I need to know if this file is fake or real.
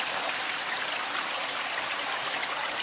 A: real